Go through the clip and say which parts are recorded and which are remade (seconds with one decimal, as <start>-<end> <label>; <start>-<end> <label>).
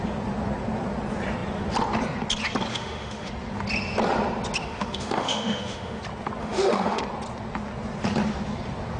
0.0-2.7 recorded; 2.7-3.3 remade; 3.3-4.6 recorded; 4.6-6.0 remade; 6.0-6.4 recorded; 6.4-7.0 remade; 7.0-9.0 recorded